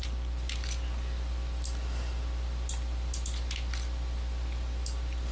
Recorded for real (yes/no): yes